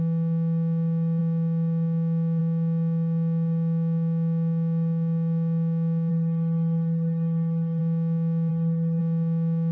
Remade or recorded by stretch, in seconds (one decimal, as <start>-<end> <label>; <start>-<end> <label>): 0.0-6.1 recorded; 6.1-7.8 remade; 7.8-8.5 recorded; 8.5-9.0 remade; 9.0-9.7 recorded